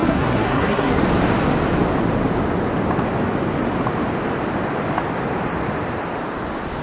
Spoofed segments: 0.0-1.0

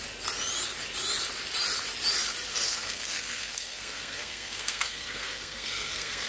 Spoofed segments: 2.5-6.3

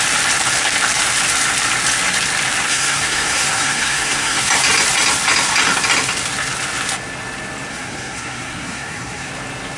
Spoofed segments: 2.7-4.5; 7.7-9.3

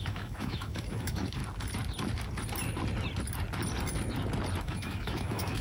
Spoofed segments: 0.0-1.4; 4.6-5.6